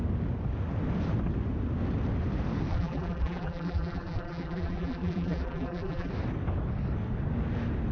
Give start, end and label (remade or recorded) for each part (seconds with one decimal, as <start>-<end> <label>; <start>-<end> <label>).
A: 0.0-2.7 recorded; 2.7-6.1 remade; 6.1-7.9 recorded